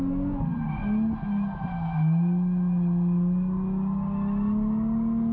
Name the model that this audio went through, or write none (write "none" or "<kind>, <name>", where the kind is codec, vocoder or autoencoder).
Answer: none